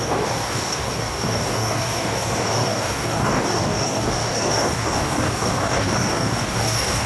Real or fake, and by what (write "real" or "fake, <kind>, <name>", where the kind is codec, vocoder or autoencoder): fake, codec, DAC